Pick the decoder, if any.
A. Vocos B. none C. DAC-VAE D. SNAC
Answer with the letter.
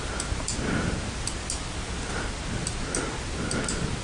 B